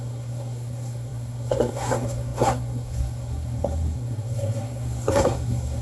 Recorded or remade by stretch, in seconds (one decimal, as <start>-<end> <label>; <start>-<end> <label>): 0.0-5.8 remade